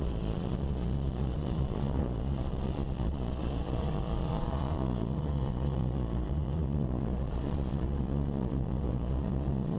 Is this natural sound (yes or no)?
no